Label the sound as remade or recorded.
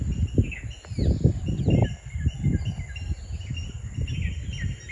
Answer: recorded